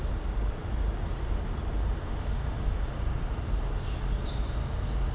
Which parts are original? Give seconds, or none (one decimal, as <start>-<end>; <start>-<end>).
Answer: none